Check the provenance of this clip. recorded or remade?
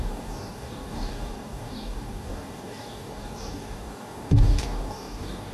remade